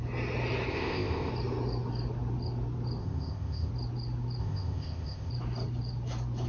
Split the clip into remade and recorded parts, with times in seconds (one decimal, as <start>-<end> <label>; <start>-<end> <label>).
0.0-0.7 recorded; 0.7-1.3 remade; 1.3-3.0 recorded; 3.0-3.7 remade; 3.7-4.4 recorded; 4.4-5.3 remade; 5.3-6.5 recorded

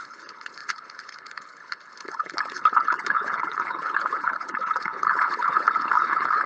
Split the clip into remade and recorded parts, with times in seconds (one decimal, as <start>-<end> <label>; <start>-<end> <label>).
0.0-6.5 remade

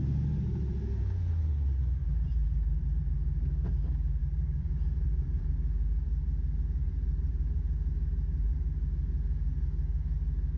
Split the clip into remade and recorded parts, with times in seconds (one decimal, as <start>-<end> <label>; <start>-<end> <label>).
0.0-2.0 recorded; 2.0-3.1 remade; 3.1-4.2 recorded; 4.2-5.5 remade; 5.5-6.8 recorded; 6.8-7.6 remade; 7.6-10.6 recorded